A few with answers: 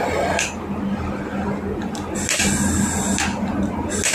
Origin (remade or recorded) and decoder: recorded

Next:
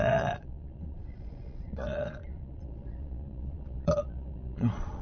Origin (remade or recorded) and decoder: remade, vocoder, Vocos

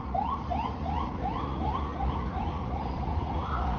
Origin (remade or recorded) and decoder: remade, vocoder, Vocos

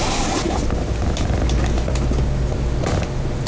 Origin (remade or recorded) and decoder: recorded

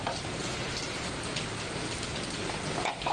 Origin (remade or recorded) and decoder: recorded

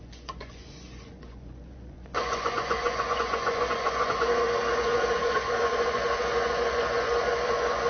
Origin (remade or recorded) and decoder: remade, vocoder, Vocos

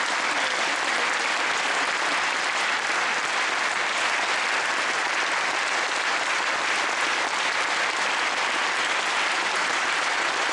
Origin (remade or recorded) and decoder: recorded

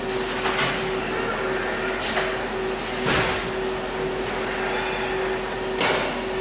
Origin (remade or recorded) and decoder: recorded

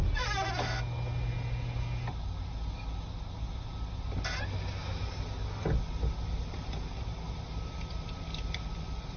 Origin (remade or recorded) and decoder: recorded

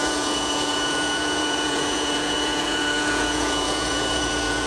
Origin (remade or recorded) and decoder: remade, vocoder, Vocos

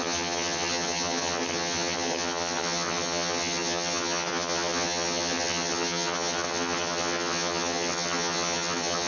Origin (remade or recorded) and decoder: remade, vocoder, HiFi-GAN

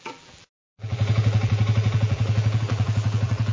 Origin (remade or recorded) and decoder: remade, vocoder, BigVGAN v2